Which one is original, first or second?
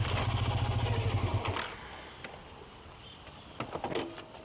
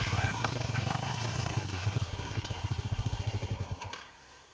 first